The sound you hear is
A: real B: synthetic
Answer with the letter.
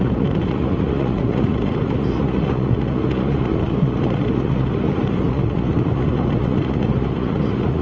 B